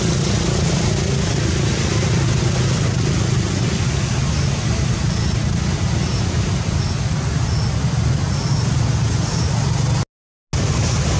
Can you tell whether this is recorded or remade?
recorded